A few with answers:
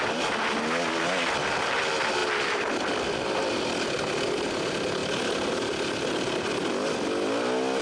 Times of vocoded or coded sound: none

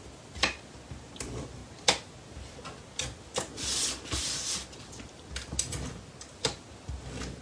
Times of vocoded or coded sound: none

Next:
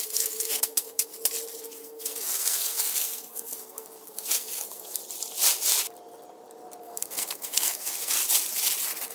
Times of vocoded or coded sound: 0.0-1.1; 1.6-5.0; 6.8-8.2